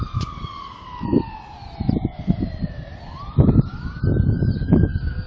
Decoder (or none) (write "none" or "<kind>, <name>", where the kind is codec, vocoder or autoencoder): none